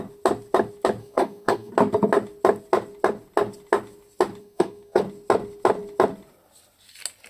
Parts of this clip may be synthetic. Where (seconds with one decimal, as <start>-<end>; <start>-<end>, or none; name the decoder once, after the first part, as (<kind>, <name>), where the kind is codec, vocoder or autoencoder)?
1.0-1.7 (codec, SNAC); 4.4-5.0